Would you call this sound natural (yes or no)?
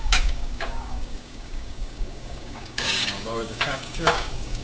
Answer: no